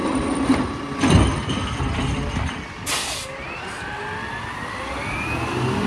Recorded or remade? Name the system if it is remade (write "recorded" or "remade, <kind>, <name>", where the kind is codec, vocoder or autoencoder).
recorded